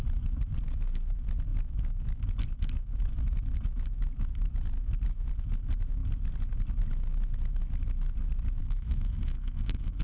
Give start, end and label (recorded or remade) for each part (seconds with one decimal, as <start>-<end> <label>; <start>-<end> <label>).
0.0-8.6 recorded; 8.6-10.0 remade